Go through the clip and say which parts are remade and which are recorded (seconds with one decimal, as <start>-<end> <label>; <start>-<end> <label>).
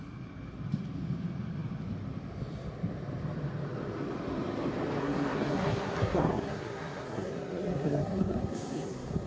0.0-5.0 recorded; 5.0-9.3 remade